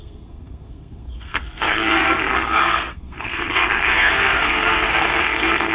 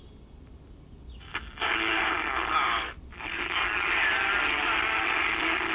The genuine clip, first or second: second